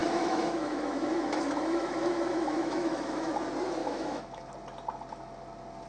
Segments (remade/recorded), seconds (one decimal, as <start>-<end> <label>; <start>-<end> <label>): 0.0-3.3 remade; 3.3-3.8 recorded; 3.8-4.5 remade; 4.5-5.9 recorded